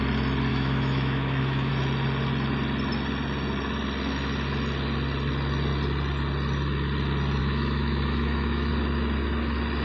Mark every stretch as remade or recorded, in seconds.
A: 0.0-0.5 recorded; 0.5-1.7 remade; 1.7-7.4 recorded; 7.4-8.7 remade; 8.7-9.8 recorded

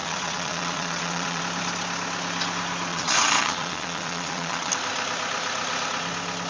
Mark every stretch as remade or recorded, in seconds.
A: 0.0-1.4 remade; 1.4-2.9 recorded; 2.9-4.7 remade; 4.7-6.5 recorded